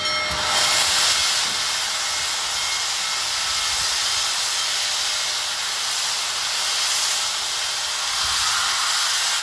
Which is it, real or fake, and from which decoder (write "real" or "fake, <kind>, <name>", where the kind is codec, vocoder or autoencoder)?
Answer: real